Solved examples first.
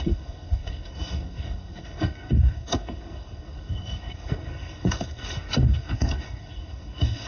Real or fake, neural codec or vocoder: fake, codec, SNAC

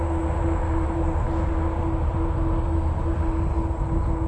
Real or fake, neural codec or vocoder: real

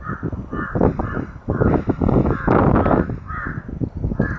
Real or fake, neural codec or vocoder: real